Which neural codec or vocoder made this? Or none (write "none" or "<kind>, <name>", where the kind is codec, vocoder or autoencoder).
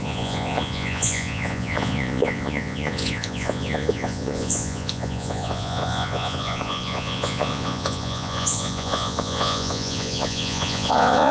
vocoder, Vocos